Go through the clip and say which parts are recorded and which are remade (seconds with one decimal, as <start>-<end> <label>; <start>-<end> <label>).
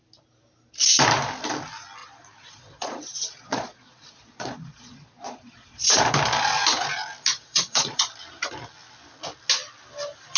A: 0.0-2.0 recorded; 2.0-6.0 remade; 6.0-7.3 recorded; 7.3-8.1 remade; 8.1-10.4 recorded